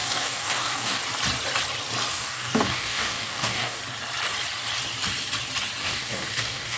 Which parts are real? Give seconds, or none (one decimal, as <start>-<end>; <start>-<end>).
1.0-2.1; 3.8-5.8

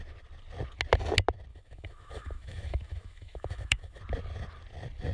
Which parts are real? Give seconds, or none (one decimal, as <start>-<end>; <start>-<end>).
0.0-1.5; 4.0-5.1

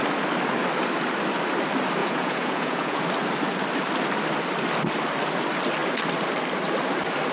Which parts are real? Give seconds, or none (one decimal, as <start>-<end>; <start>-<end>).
0.0-2.0; 3.0-7.3